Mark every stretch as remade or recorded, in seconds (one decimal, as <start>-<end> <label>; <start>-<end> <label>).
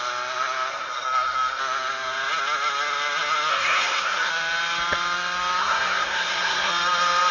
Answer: 0.0-0.7 recorded; 0.7-1.6 remade; 1.6-3.5 recorded; 3.5-4.3 remade; 4.3-5.6 recorded; 5.6-6.7 remade; 6.7-7.3 recorded